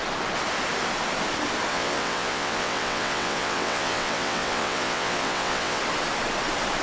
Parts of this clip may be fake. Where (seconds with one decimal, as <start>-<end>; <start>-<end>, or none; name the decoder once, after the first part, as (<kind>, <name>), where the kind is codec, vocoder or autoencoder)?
1.7-5.8 (vocoder, WaveNeXt)